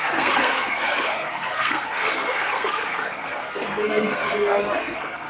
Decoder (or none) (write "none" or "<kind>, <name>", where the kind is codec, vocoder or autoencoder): codec, SNAC